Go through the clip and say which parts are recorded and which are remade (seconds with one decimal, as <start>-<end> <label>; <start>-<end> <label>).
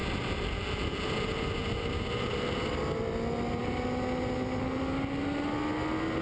0.0-6.2 recorded